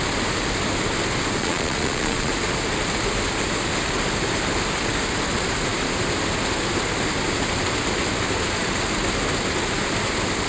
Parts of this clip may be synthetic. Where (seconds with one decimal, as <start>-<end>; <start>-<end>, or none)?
1.4-2.3